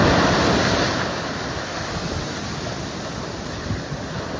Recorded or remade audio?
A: recorded